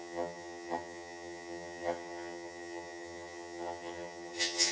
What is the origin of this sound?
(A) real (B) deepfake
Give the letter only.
B